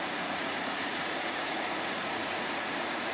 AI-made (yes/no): yes